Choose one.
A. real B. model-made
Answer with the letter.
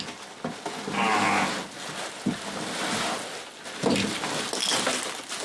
A